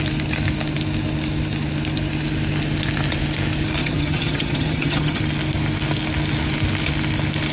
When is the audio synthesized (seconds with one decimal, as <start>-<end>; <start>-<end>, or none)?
3.8-5.2